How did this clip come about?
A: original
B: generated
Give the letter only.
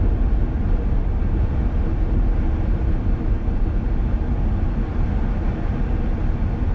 A